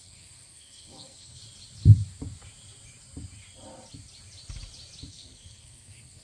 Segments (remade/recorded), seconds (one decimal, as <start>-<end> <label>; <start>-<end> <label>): 0.0-1.4 remade; 1.4-5.1 recorded; 5.1-6.2 remade